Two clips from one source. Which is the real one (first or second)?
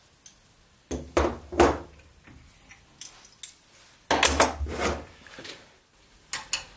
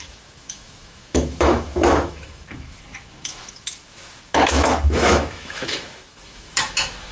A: first